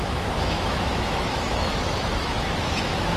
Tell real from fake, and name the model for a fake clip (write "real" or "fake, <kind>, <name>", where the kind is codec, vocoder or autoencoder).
fake, autoencoder, DAC-VAE